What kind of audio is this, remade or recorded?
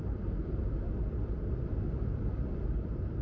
recorded